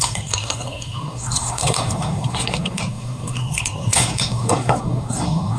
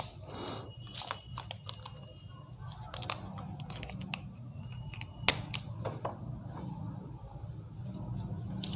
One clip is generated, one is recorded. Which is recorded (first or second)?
second